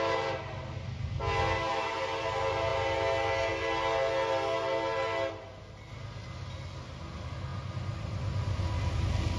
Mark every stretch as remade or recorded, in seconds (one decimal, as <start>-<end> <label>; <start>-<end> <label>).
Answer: 0.0-9.4 recorded